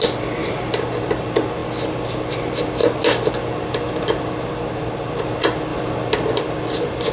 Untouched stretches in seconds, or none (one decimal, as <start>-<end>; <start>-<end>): 0.0-7.1